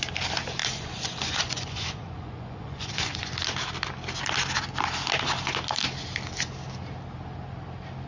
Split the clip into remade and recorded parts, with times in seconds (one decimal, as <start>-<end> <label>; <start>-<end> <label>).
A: 0.0-0.6 recorded; 0.6-3.3 remade; 3.3-8.1 recorded